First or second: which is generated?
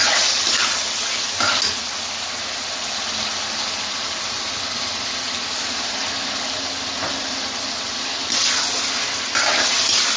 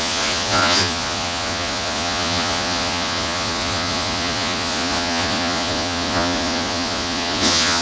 second